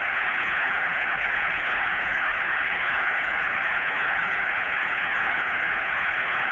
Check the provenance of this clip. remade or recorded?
remade